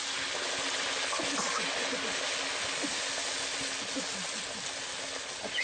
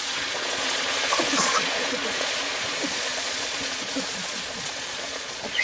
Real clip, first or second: first